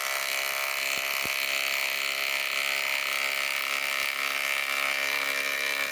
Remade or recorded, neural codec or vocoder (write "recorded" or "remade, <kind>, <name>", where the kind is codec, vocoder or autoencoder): recorded